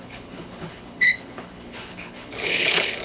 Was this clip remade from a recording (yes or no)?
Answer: yes